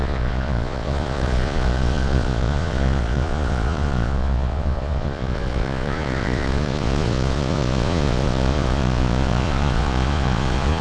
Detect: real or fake fake